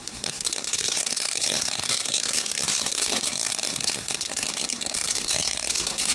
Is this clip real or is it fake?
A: fake